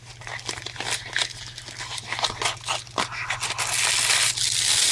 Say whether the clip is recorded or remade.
recorded